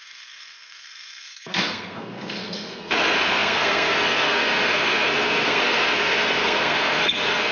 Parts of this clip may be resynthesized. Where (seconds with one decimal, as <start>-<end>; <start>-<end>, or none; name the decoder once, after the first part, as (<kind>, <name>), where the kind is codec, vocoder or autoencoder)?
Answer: 0.0-7.5 (codec, SNAC)